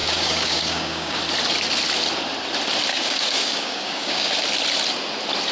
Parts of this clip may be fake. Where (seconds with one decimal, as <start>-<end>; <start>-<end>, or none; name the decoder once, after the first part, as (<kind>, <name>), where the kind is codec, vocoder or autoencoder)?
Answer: 0.0-1.2 (codec, DAC); 2.9-4.3